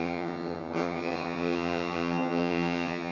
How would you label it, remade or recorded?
remade